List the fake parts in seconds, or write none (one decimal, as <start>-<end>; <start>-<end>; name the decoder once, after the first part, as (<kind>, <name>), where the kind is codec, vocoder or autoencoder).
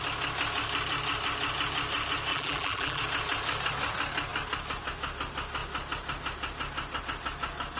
2.3-3.0 (vocoder, BigVGAN v2)